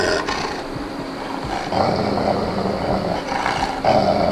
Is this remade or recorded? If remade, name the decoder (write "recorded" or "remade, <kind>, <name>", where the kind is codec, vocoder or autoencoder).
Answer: recorded